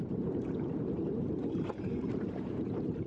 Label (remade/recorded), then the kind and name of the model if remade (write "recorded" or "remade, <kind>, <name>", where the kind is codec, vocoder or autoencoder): remade, vocoder, BigVGAN v2